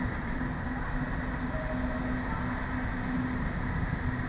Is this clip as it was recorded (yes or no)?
yes